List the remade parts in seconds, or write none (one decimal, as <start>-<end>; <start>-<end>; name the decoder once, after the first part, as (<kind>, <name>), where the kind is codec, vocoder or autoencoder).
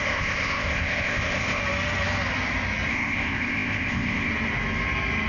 0.0-1.6 (codec, ZipCodec); 2.9-4.3